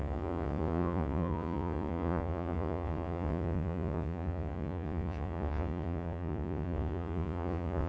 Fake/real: fake